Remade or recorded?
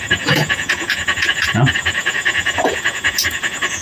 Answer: remade